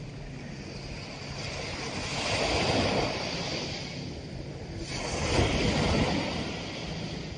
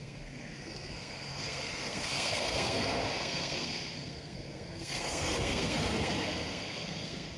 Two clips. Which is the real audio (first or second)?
first